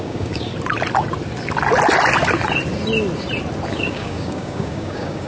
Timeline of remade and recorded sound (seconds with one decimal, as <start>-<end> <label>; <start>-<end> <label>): 0.0-0.5 remade; 0.5-3.7 recorded; 3.7-5.3 remade